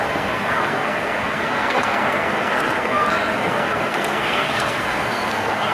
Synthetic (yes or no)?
yes